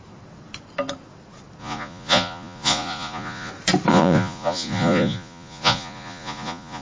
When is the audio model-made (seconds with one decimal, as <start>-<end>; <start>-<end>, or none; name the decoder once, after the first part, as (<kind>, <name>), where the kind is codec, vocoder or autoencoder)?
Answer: 1.6-3.5 (vocoder, Vocos); 3.9-6.8